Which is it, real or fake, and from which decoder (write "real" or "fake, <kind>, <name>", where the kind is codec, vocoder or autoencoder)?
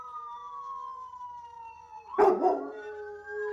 real